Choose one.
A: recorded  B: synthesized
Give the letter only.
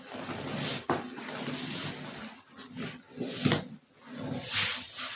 A